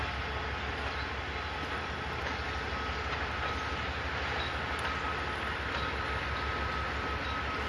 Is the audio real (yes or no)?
yes